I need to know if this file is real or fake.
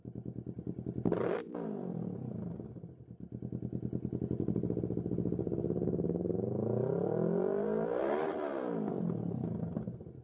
real